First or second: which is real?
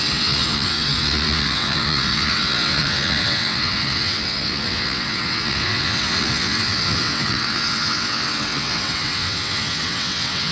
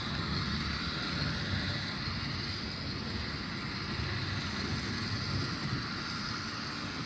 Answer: second